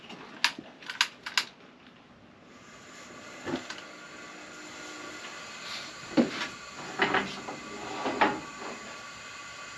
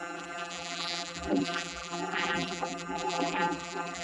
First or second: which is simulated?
second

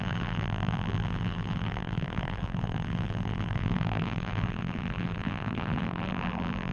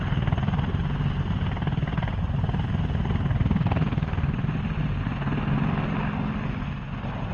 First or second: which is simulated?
first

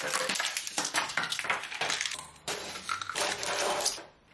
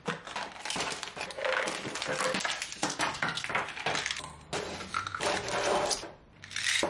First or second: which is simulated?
first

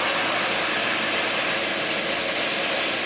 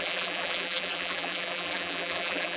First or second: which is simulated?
second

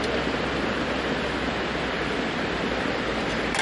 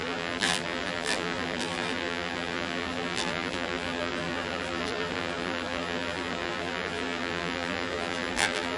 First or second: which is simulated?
second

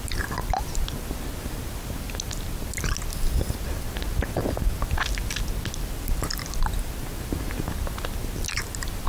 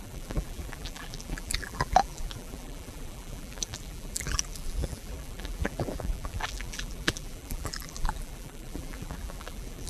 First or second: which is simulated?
second